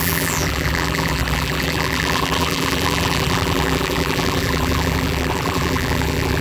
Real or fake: fake